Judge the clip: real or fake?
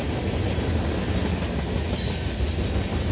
real